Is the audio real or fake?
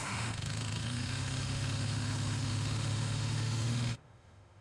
fake